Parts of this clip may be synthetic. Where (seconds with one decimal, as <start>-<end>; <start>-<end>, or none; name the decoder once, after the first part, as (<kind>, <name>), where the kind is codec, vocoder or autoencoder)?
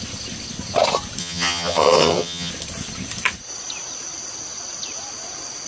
1.2-2.5 (vocoder, HiFi-GAN)